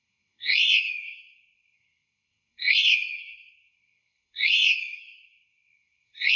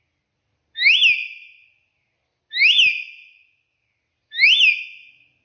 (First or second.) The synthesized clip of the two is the first